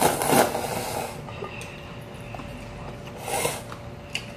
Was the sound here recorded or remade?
recorded